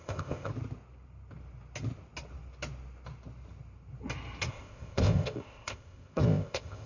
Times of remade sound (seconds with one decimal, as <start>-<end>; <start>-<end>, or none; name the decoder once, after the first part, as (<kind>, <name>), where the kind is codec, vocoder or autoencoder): 0.0-0.5 (codec, ZipCodec); 4.5-6.9